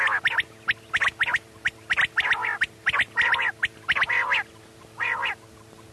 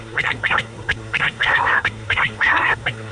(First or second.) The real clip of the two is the first